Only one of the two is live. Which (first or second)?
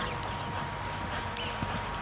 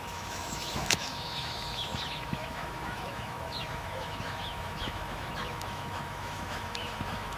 first